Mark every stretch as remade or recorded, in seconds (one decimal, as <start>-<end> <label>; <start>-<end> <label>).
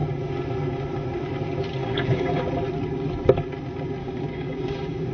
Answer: 0.0-1.8 recorded; 1.8-2.4 remade; 2.4-4.0 recorded; 4.0-5.1 remade